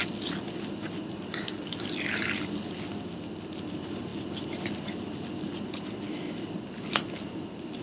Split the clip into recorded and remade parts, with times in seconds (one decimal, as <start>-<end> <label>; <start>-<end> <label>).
0.0-7.8 recorded